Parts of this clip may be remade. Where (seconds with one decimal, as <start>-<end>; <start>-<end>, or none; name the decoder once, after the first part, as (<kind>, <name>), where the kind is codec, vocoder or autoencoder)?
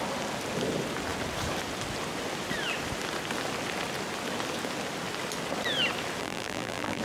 6.2-7.0 (vocoder, BigVGAN v2)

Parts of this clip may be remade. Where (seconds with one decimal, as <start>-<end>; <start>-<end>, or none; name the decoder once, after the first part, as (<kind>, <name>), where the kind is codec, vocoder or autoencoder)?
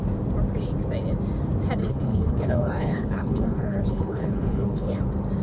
1.8-5.0 (codec, HILCodec)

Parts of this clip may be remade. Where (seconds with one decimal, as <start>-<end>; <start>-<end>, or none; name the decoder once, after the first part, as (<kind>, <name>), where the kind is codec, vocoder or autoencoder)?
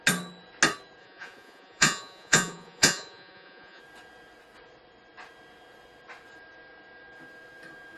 1.0-3.8 (vocoder, Vocos)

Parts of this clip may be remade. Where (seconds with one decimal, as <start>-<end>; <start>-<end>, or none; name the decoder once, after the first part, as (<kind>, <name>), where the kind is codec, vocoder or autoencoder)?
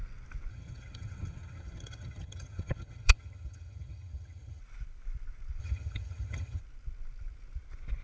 0.5-4.6 (vocoder, HiFi-GAN); 5.6-6.6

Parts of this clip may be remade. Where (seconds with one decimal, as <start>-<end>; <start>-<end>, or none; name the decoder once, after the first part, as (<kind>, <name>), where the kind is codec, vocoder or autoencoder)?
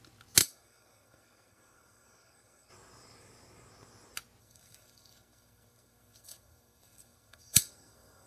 0.4-2.7 (codec, SNAC); 4.4-8.3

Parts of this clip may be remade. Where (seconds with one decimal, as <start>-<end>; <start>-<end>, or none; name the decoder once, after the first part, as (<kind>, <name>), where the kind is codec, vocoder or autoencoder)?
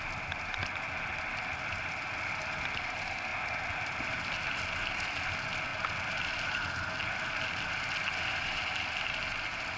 3.3-4.0 (vocoder, BigVGAN v2)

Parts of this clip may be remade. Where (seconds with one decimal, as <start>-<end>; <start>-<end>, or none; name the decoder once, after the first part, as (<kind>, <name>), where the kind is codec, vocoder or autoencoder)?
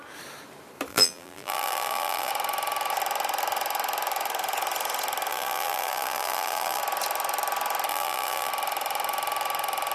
0.9-2.3 (vocoder, BigVGAN v2); 5.3-6.8; 7.9-8.5